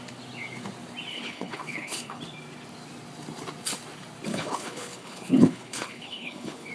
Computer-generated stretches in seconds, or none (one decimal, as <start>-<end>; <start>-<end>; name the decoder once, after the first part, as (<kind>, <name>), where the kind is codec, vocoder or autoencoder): 1.1-2.2 (codec, HILCodec); 4.3-6.7